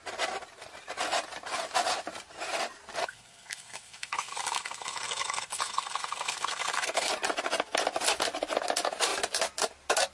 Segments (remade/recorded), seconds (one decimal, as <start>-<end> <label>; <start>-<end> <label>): 0.0-3.0 recorded; 3.0-7.1 remade; 7.1-10.1 recorded

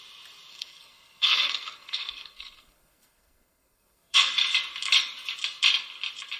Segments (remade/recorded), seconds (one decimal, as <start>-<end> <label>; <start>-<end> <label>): 0.0-0.5 recorded; 0.5-4.3 remade; 4.3-6.4 recorded